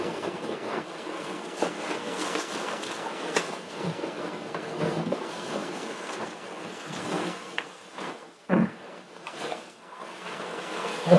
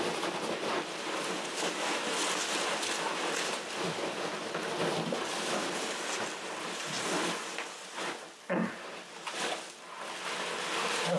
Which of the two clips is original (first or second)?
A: second